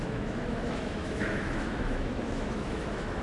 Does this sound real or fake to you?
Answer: fake